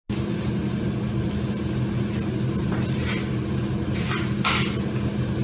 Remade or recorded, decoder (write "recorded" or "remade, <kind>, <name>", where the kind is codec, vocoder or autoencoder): recorded